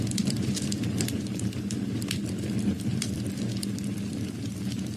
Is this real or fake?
fake